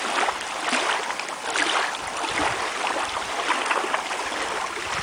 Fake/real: real